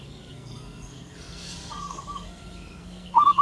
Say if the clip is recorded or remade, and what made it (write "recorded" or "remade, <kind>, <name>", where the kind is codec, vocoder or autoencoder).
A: remade, codec, SNAC